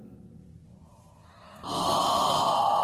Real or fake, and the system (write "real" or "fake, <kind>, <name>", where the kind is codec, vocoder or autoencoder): real